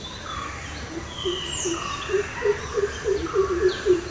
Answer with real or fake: fake